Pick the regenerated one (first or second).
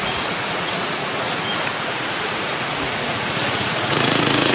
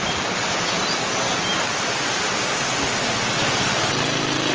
first